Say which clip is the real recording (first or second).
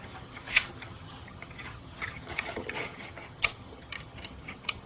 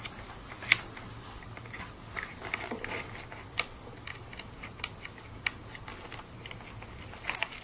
second